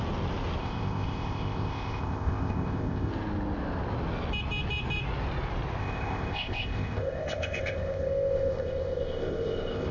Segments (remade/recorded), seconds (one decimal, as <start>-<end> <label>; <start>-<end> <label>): 0.0-0.6 recorded; 0.6-3.1 remade; 3.1-5.8 recorded; 5.8-9.9 remade